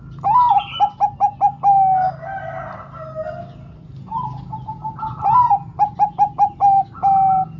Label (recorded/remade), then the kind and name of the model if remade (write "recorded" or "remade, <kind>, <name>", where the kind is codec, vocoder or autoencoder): recorded